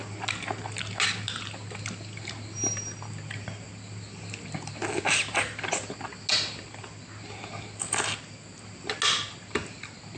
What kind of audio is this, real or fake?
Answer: real